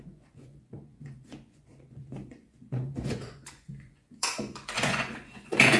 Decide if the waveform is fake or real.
fake